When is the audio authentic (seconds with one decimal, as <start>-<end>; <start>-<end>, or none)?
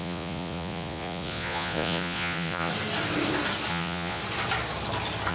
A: 2.7-3.7; 4.2-5.3